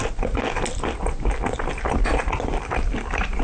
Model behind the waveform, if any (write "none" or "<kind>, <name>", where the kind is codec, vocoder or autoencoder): none